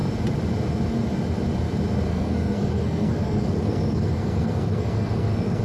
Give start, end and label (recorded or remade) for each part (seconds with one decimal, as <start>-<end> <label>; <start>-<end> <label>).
0.0-2.1 recorded; 2.1-5.6 remade

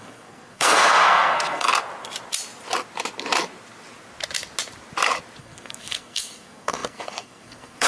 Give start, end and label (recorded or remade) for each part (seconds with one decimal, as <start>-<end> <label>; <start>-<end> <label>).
0.0-1.7 remade; 1.7-5.4 recorded; 5.4-7.9 remade

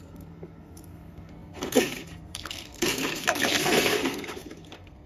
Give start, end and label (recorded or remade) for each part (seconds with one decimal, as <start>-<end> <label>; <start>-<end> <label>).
0.0-5.1 remade

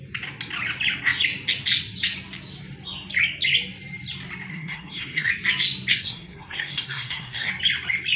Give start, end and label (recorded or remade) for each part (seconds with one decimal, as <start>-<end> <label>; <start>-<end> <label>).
0.0-4.5 recorded; 4.5-5.3 remade; 5.3-5.9 recorded; 5.9-7.5 remade; 7.5-8.2 recorded

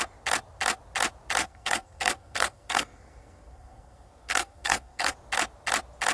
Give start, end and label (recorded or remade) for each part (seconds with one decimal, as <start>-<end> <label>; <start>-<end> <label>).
0.0-1.4 recorded; 1.4-5.1 remade; 5.1-6.1 recorded

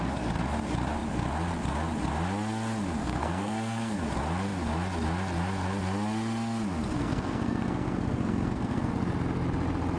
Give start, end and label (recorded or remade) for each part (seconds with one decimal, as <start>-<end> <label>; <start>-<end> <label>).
0.0-3.0 recorded; 3.0-4.0 remade; 4.0-7.0 recorded; 7.0-8.9 remade; 8.9-10.0 recorded